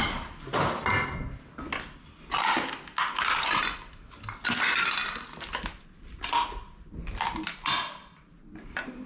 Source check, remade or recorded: recorded